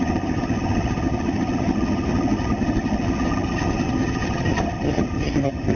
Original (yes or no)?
no